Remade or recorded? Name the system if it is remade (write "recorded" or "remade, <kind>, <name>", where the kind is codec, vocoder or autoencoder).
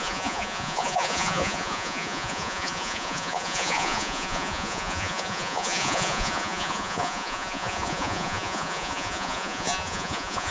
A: remade, vocoder, Vocos